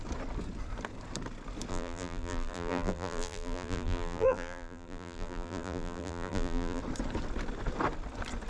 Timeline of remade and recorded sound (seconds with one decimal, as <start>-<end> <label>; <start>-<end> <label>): 0.0-1.7 recorded; 1.7-6.8 remade; 6.8-8.5 recorded